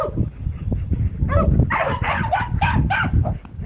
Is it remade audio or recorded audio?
recorded